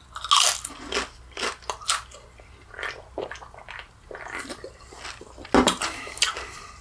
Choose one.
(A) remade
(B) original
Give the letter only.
B